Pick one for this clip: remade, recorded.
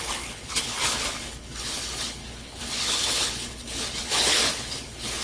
remade